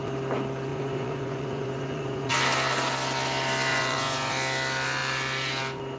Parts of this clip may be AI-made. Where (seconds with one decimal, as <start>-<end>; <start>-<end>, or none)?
0.7-2.3; 3.7-4.3